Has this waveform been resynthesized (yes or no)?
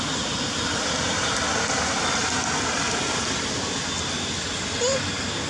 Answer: no